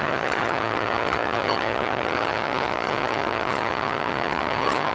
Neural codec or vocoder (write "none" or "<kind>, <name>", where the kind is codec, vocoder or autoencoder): vocoder, HiFi-GAN